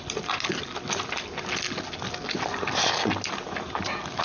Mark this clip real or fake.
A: real